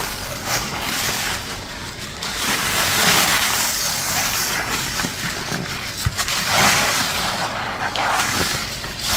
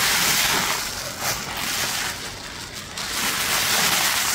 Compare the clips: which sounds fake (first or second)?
first